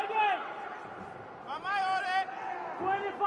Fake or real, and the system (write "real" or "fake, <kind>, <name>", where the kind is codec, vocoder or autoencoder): real